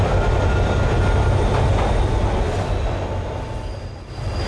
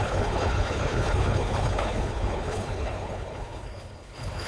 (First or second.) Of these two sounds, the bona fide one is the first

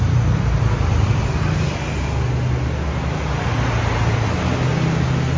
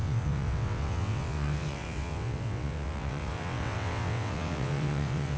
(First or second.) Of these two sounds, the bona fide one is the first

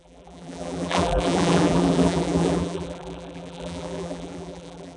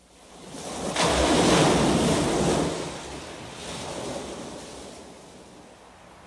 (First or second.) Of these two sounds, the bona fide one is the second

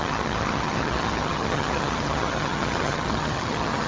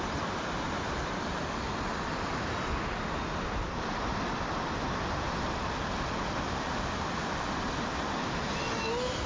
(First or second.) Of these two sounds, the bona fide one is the second